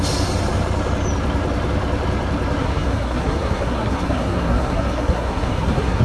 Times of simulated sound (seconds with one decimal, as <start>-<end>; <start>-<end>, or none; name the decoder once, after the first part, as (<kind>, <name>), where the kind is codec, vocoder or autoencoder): 2.6-6.0 (codec, SNAC)